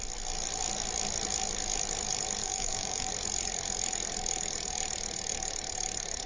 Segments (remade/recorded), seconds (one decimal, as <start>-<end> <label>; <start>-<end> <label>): 0.0-2.4 recorded; 2.4-3.1 remade; 3.1-6.3 recorded